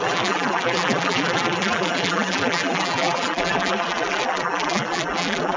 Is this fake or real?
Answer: fake